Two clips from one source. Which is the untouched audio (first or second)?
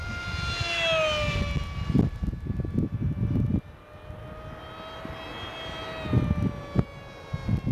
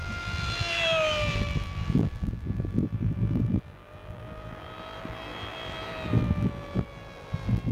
first